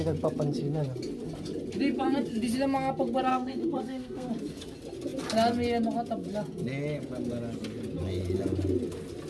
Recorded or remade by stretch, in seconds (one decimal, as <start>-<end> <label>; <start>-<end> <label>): 0.0-3.3 recorded; 3.3-4.3 remade; 4.3-9.3 recorded